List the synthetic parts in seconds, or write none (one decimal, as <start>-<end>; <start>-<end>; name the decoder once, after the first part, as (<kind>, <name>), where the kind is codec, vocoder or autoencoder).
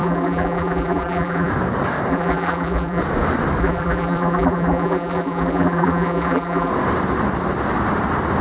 0.0-1.5 (vocoder, BigVGAN v2); 2.1-3.0; 3.6-6.7